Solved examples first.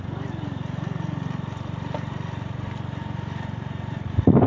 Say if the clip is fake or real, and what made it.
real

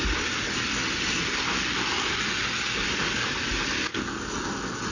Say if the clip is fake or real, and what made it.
real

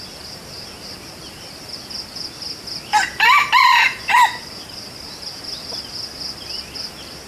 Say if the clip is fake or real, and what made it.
real